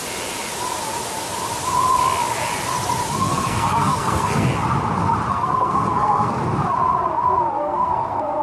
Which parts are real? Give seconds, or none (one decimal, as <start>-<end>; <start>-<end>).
0.0-3.1; 4.5-5.3; 6.4-7.5